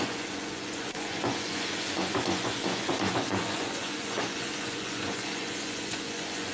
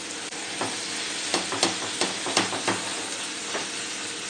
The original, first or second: second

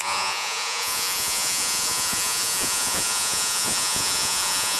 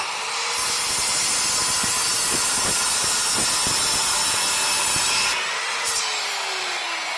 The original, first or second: second